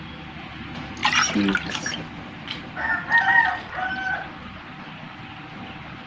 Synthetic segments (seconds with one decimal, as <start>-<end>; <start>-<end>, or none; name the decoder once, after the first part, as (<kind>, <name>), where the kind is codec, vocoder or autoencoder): none